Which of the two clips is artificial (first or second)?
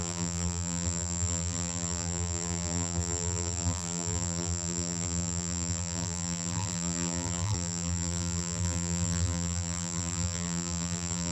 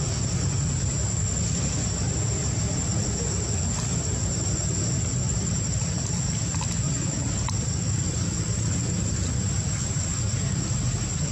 first